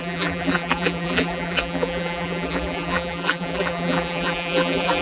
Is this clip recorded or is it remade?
remade